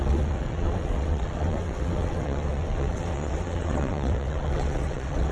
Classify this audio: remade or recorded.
remade